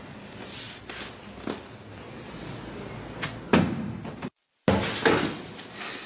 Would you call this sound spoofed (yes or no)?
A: no